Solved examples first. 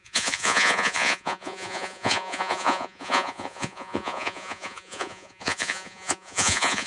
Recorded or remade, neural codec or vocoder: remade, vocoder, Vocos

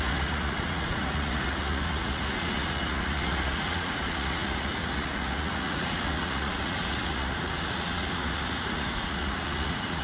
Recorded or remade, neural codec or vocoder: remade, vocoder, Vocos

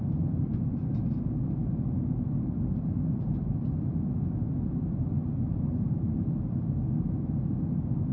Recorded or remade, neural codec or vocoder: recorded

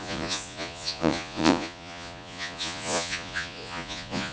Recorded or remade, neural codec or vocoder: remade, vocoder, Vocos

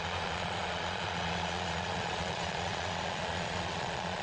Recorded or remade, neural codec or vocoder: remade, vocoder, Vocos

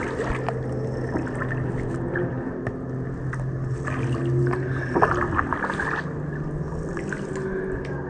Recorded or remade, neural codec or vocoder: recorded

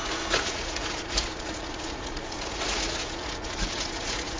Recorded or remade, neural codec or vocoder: remade, vocoder, Vocos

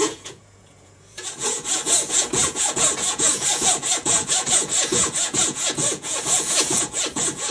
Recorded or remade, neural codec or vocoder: remade, vocoder, Vocos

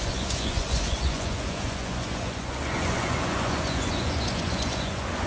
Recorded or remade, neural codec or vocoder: remade, vocoder, Vocos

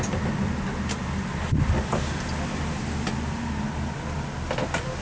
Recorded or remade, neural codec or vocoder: recorded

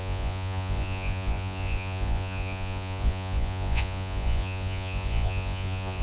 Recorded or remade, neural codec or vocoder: remade, vocoder, Vocos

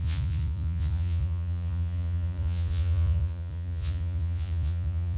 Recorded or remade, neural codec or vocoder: remade, vocoder, Vocos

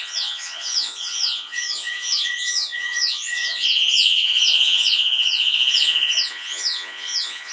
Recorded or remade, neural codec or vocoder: remade, vocoder, Vocos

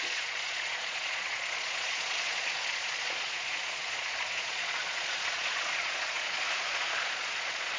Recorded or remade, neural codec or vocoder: remade, vocoder, Vocos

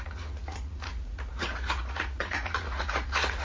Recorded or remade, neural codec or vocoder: remade, vocoder, Vocos